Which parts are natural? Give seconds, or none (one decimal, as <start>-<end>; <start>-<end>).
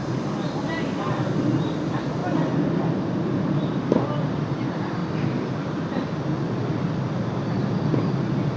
0.0-2.2; 3.5-5.0; 5.8-8.6